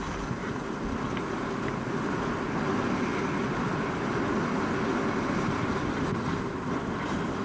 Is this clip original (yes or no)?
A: yes